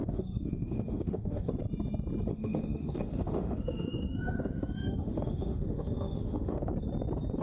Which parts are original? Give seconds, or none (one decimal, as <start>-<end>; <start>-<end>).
1.5-2.3; 6.7-7.4